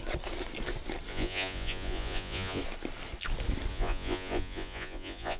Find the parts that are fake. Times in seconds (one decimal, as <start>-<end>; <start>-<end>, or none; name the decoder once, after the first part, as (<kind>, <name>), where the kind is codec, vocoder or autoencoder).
1.1-2.6 (vocoder, Vocos); 3.7-5.4